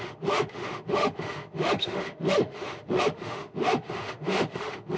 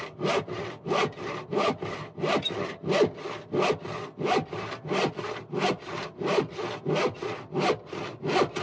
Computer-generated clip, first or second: first